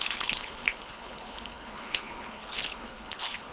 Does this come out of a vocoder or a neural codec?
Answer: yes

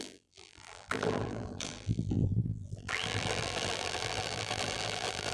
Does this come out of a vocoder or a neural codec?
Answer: yes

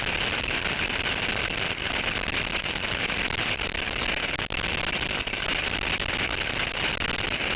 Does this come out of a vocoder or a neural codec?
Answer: no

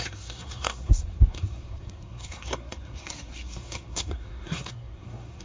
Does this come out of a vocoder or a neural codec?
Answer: yes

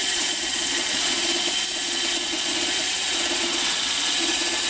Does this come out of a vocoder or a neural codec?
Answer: yes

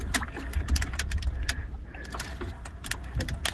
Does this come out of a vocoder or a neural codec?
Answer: no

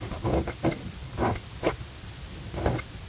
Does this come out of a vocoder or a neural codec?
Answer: no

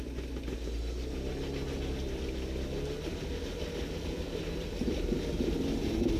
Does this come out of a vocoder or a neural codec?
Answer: no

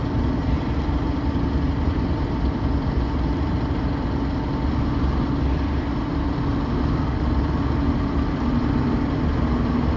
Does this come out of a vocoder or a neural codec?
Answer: no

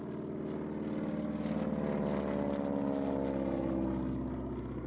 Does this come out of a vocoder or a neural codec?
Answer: no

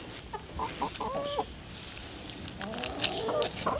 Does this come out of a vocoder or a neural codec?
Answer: no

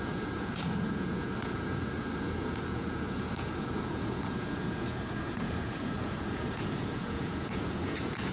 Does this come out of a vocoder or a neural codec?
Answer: yes